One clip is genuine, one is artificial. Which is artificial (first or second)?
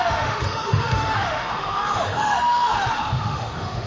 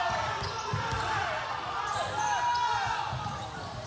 first